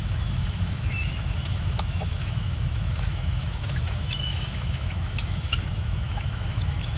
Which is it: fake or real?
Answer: fake